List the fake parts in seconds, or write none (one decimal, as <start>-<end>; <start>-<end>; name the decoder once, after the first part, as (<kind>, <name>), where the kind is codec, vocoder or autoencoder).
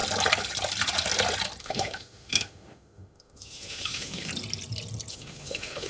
1.6-4.3 (autoencoder, DAC-VAE); 5.1-5.9